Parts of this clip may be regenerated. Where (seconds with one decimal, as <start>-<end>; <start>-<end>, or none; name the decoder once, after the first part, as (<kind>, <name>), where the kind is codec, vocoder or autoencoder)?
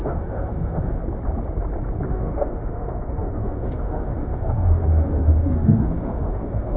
0.0-1.0 (autoencoder, DAC-VAE); 2.1-6.8